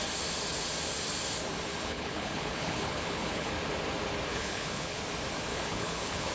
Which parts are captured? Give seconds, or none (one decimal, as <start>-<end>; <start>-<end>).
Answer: 0.0-1.7; 3.5-4.3; 5.0-5.5